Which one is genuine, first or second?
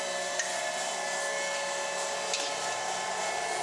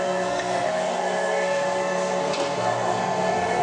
first